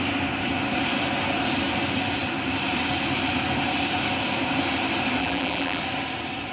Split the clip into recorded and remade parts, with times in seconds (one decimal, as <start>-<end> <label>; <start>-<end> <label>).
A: 0.0-5.2 recorded; 5.2-5.8 remade; 5.8-6.5 recorded